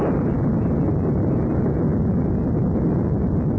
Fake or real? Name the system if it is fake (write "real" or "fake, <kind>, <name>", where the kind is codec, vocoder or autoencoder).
real